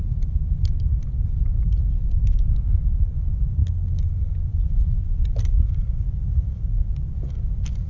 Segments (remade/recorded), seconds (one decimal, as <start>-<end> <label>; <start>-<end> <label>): 0.0-3.6 recorded; 3.6-4.1 remade; 4.1-7.9 recorded